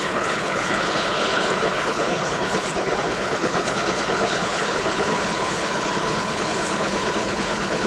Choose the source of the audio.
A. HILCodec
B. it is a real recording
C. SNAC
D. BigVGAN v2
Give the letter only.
A